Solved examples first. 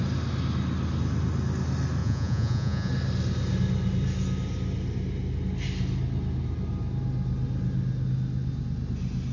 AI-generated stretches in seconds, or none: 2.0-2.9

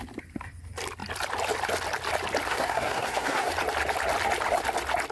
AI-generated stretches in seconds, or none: 2.5-3.5

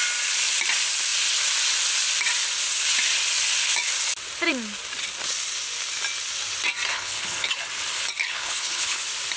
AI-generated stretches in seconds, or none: 6.9-7.5; 8.2-9.0

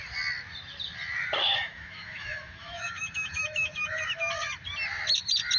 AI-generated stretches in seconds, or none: 1.5-4.3

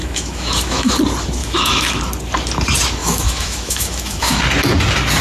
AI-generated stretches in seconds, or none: 0.0-0.9; 1.4-2.0; 3.0-4.4

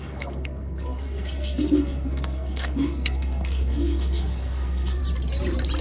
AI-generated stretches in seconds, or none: 0.0-5.0